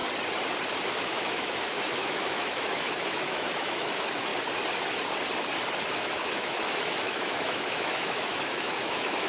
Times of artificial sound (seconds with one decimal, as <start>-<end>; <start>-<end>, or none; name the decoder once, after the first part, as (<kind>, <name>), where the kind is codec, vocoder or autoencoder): 0.9-4.3 (autoencoder, DAC-VAE); 5.9-9.3